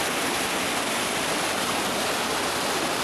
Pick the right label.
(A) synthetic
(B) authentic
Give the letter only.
B